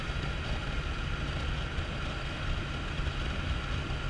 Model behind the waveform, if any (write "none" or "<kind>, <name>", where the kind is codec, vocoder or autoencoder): none